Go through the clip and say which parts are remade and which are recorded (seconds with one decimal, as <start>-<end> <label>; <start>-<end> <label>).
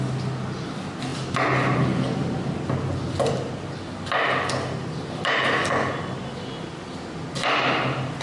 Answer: 0.0-8.2 recorded